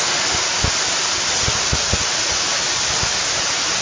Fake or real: real